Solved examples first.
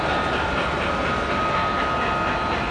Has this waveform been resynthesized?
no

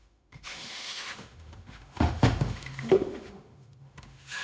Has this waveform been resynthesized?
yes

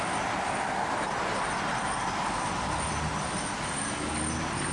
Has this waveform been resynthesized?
no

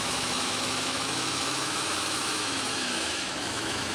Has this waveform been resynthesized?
yes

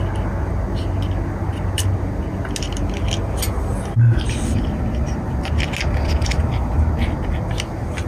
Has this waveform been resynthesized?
no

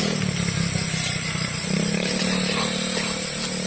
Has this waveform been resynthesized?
no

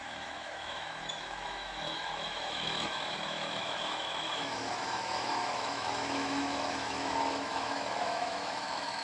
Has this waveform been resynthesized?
yes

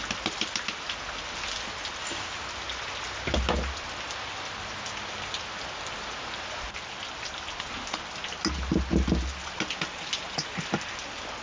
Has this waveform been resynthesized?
no